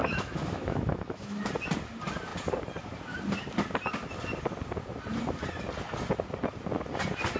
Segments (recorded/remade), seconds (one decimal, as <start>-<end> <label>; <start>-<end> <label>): 0.0-1.5 remade; 1.5-7.4 recorded